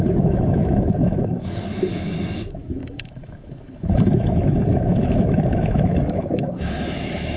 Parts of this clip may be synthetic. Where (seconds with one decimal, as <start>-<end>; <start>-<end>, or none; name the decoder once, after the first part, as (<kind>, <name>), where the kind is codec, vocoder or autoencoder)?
0.0-7.4 (autoencoder, DAC-VAE)